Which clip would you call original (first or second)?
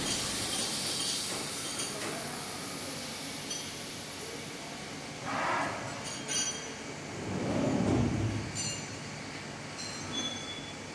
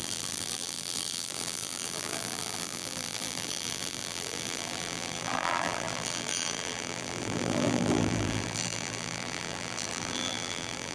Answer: first